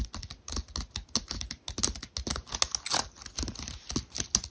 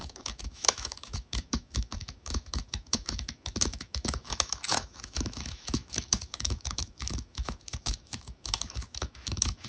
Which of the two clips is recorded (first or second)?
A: first